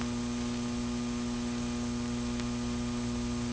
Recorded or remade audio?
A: recorded